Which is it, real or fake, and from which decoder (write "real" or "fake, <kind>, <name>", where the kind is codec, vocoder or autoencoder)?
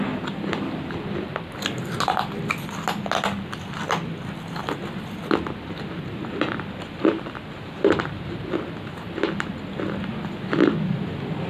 real